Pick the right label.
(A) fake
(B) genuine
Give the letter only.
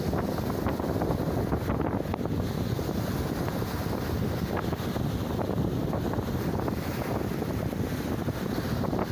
B